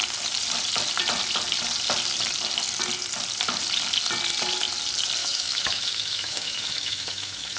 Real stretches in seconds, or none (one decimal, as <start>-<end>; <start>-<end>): 0.0-5.2